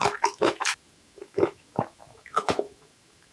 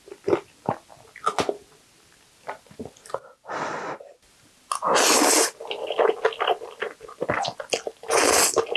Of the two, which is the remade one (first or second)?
first